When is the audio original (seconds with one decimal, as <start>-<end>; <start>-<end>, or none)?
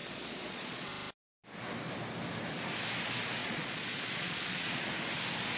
0.9-3.4; 4.9-5.6